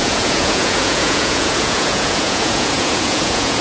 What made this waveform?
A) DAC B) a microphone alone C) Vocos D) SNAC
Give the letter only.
C